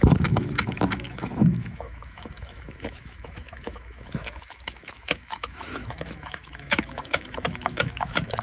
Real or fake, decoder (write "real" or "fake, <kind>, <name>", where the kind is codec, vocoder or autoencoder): fake, autoencoder, DAC-VAE